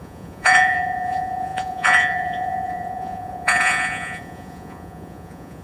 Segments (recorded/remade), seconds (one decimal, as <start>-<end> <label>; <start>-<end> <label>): 0.0-5.6 remade